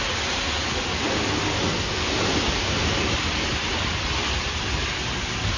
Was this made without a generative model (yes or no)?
yes